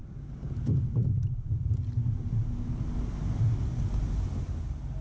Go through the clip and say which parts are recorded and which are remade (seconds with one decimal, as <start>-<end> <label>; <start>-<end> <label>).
0.0-5.0 recorded